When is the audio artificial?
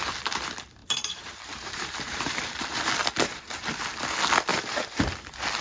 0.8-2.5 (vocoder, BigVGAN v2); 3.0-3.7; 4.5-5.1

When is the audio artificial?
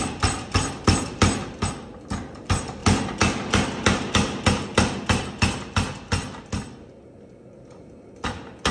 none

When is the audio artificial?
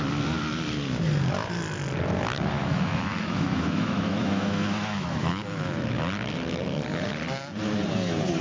2.6-5.9 (autoencoder, DAC-VAE)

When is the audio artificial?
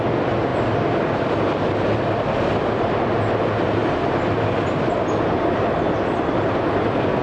none